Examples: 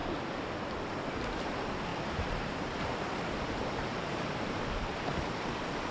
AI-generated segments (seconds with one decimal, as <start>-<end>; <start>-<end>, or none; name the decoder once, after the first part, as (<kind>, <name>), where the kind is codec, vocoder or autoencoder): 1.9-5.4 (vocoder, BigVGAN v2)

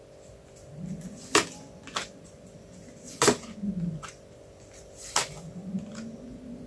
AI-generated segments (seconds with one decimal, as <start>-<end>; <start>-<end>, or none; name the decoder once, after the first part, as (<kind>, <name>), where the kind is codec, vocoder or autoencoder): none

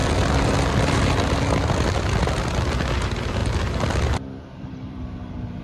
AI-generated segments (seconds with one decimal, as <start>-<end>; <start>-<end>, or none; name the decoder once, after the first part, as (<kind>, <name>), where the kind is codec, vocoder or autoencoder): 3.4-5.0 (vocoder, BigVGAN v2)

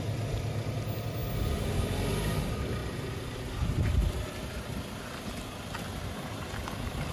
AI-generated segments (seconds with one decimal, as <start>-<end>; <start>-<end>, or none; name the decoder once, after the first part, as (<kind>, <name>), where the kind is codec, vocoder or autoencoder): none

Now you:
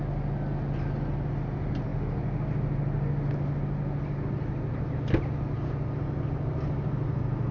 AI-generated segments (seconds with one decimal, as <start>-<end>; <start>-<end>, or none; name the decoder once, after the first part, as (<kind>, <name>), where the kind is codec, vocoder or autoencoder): none

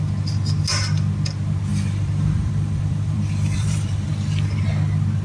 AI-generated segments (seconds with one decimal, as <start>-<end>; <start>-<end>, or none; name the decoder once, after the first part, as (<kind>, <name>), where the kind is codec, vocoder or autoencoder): 1.7-4.1 (vocoder, BigVGAN v2)

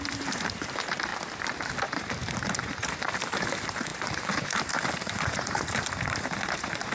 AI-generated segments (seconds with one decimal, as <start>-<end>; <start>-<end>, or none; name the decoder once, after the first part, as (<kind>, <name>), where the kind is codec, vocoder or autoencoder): 0.0-1.1 (vocoder, BigVGAN v2); 1.8-6.9

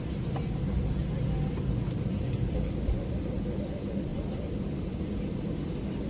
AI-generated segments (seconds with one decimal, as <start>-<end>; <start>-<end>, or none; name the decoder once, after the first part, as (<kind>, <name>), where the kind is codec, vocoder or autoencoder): 4.1-5.1 (vocoder, BigVGAN v2)